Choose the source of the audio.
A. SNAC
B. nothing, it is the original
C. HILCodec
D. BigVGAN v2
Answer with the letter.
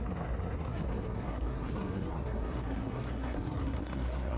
A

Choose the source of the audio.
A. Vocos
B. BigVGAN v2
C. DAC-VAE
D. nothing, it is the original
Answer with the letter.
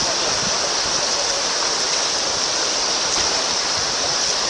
D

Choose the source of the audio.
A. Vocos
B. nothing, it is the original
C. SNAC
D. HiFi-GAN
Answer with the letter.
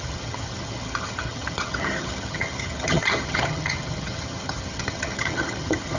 D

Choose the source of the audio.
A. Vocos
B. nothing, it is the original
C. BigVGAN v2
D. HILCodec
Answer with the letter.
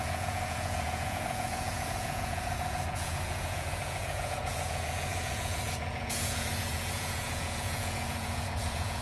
A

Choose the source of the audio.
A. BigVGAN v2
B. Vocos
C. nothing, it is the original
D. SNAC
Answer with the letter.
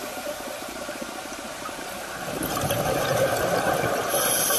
A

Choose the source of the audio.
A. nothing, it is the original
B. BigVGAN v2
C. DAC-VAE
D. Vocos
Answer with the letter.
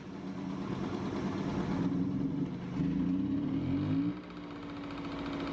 A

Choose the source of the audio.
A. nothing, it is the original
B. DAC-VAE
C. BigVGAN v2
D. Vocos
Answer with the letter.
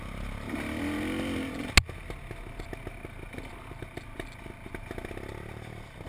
A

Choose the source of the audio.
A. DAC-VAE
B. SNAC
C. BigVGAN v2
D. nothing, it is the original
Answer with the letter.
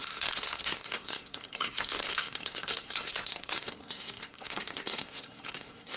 B